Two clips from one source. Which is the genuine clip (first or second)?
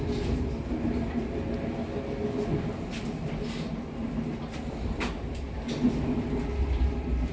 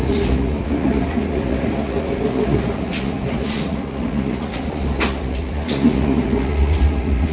first